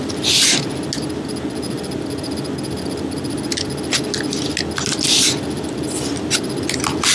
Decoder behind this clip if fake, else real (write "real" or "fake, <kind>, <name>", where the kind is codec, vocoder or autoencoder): real